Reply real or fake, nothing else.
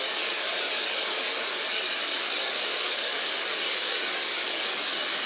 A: fake